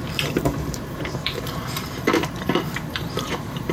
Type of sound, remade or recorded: remade